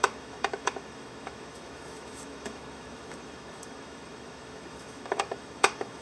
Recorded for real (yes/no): no